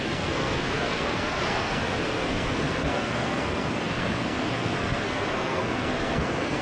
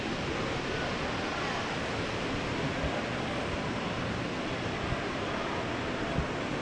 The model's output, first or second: first